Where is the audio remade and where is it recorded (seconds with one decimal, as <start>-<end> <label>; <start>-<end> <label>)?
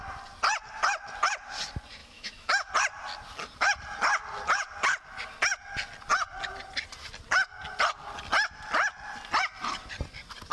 0.0-2.0 recorded; 2.0-2.7 remade; 2.7-10.5 recorded